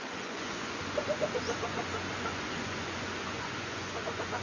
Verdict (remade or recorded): remade